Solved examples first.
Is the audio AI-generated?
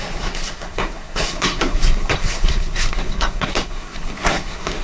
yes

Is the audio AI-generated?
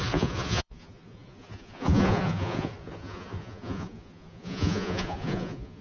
yes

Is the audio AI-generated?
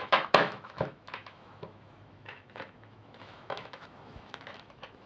yes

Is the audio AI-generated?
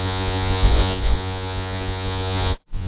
yes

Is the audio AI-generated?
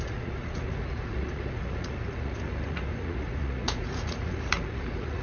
yes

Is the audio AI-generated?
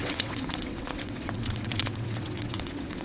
yes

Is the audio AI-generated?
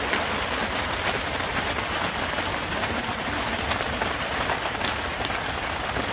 no